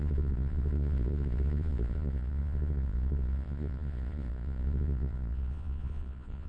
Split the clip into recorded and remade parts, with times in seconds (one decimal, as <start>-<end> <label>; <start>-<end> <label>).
0.0-6.5 remade